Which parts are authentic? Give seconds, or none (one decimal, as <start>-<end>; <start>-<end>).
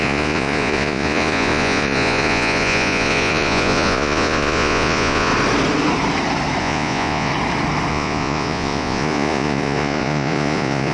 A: 5.3-6.6; 7.3-7.9